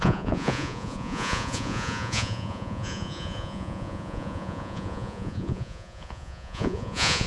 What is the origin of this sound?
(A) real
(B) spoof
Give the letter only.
B